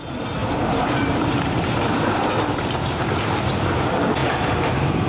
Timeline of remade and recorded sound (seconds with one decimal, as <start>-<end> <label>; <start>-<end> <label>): 0.0-0.4 recorded; 0.4-3.0 remade; 3.0-4.2 recorded; 4.2-5.1 remade